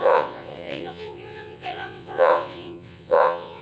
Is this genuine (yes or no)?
no